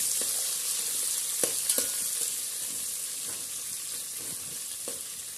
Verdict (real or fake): real